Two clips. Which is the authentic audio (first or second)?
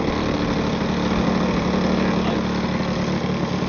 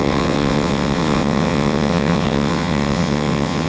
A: first